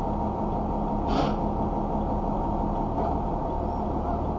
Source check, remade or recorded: recorded